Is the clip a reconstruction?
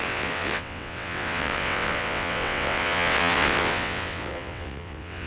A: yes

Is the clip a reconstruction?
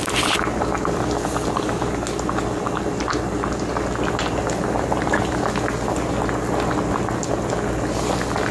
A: no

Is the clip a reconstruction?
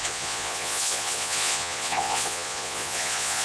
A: yes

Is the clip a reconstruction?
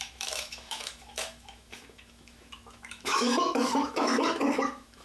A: yes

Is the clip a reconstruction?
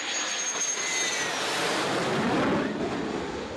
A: no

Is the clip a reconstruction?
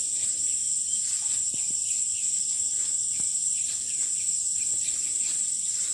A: no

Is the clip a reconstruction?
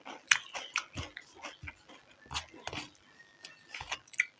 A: no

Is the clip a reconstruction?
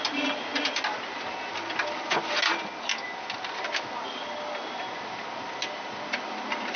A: no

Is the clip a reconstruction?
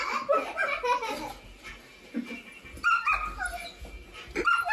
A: no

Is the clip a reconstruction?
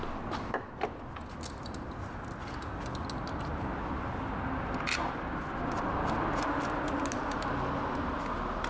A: no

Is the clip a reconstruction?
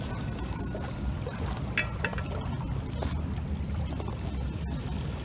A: no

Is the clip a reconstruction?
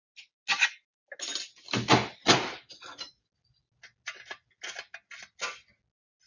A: no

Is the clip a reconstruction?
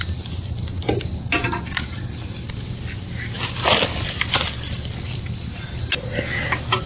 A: no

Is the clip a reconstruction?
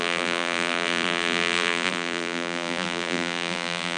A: yes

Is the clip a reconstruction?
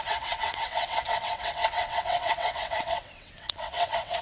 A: yes